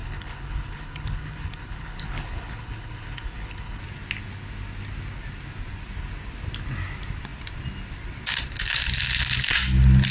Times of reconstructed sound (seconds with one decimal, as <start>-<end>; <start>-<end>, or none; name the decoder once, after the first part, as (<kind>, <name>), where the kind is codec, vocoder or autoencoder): 0.0-3.8 (codec, HILCodec)